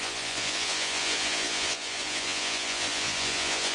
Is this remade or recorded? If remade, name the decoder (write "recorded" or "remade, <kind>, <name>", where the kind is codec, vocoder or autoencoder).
remade, vocoder, Vocos